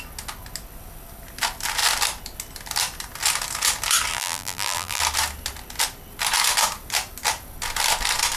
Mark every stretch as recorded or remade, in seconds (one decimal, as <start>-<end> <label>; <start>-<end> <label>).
0.0-4.1 recorded; 4.1-5.0 remade; 5.0-8.4 recorded